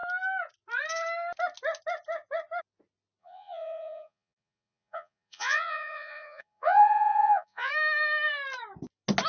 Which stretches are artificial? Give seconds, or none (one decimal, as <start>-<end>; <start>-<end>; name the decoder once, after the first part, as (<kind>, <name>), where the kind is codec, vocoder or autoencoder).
3.2-7.7 (vocoder, Vocos)